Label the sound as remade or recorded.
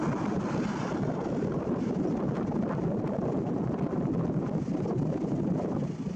recorded